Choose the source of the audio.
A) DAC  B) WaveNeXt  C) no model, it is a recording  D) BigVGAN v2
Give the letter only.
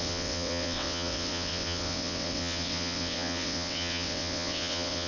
B